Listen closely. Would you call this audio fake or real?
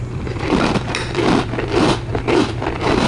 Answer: fake